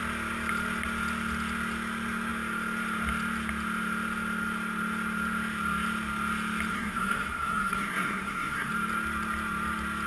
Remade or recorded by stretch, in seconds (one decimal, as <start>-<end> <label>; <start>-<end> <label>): 0.0-6.7 recorded; 6.7-8.7 remade; 8.7-10.1 recorded